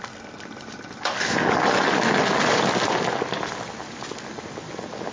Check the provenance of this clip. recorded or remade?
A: recorded